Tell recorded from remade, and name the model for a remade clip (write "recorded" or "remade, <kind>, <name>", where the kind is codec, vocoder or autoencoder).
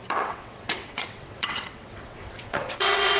remade, vocoder, WaveNeXt